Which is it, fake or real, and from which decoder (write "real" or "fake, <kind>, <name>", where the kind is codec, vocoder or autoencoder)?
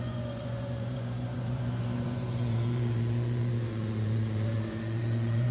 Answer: fake, vocoder, Vocos